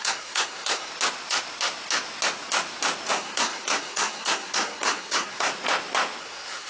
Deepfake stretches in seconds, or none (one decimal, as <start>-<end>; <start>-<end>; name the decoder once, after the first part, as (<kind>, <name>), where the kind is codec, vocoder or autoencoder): 0.0-0.9 (codec, SNAC); 3.1-5.5; 6.2-6.7